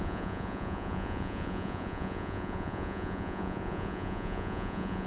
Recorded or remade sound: remade